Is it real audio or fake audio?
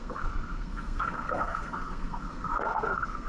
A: fake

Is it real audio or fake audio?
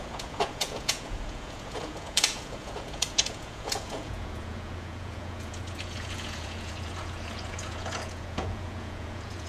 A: fake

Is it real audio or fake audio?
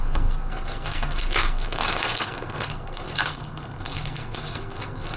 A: fake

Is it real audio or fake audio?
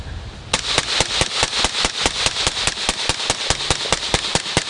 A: real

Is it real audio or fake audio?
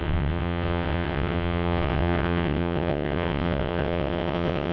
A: fake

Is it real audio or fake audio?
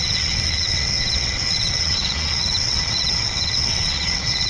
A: fake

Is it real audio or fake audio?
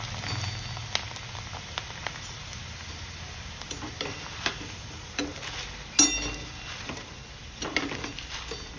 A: real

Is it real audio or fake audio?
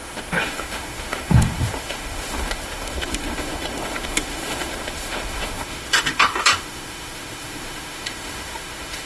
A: fake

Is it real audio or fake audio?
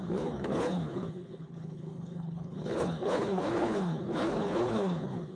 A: fake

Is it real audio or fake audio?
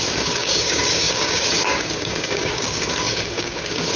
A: fake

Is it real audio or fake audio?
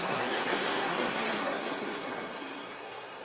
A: fake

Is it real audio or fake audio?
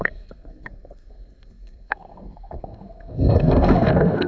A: fake